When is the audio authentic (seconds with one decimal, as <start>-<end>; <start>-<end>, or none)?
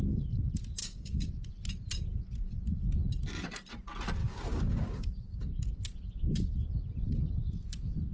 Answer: 0.0-0.8; 1.3-4.2; 5.7-8.1